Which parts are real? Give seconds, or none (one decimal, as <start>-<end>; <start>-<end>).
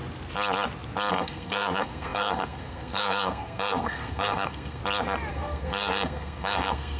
0.0-1.1; 4.8-5.3